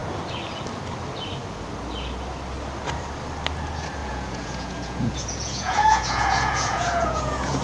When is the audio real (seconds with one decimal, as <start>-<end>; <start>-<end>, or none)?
0.0-4.0